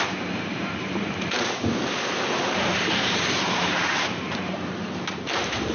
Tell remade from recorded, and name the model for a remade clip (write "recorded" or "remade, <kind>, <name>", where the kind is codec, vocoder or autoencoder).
remade, vocoder, BigVGAN v2